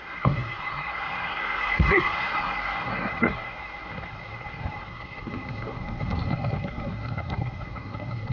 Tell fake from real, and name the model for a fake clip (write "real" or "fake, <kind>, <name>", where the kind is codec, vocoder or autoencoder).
fake, codec, SNAC